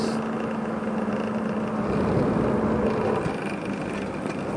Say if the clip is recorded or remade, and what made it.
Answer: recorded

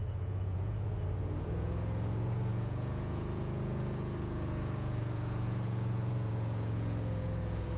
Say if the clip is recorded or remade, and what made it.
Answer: remade, vocoder, Vocos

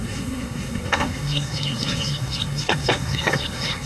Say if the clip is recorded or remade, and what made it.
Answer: remade, codec, SNAC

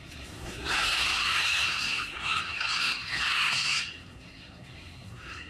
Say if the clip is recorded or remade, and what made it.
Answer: remade, codec, SNAC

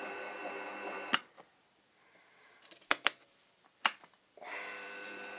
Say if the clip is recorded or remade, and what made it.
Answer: remade, vocoder, BigVGAN v2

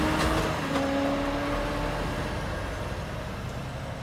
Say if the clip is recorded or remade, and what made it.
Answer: recorded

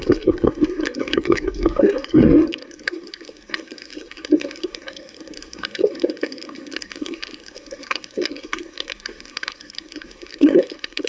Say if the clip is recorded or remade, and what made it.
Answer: remade, codec, SNAC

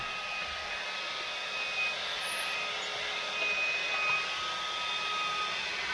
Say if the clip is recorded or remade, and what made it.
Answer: recorded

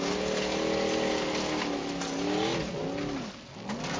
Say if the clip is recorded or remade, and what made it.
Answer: recorded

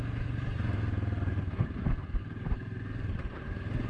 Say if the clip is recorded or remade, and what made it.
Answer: remade, vocoder, BigVGAN v2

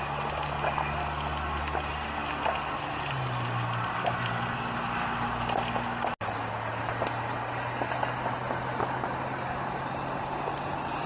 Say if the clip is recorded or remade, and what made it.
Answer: recorded